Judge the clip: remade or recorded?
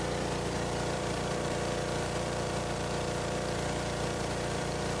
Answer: remade